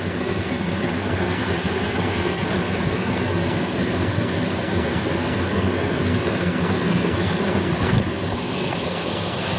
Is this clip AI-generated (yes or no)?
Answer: yes